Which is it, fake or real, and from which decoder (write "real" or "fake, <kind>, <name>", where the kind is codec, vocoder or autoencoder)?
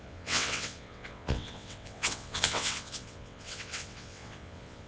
fake, vocoder, WaveNeXt